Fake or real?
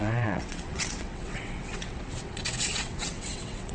fake